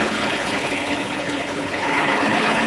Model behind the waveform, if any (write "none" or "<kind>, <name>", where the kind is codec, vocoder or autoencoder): codec, HILCodec